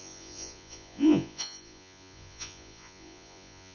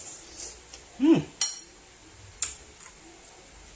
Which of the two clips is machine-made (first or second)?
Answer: first